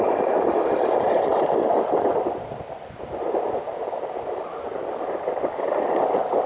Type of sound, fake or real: real